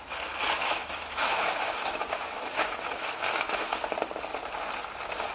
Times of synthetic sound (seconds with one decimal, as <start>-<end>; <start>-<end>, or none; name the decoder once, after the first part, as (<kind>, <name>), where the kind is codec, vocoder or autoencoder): 0.6-3.8 (autoencoder, DAC-VAE)